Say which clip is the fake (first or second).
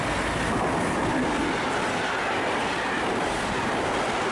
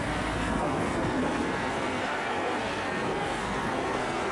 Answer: second